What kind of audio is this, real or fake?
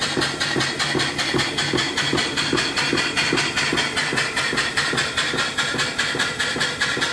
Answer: real